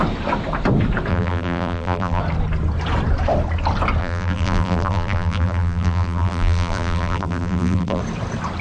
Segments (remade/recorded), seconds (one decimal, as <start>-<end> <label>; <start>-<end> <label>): 0.0-1.1 recorded; 1.1-2.2 remade; 2.2-4.0 recorded; 4.0-8.0 remade; 8.0-8.6 recorded